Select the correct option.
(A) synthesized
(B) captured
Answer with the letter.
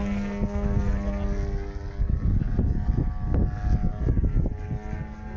B